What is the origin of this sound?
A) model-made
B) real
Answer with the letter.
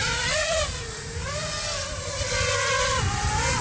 B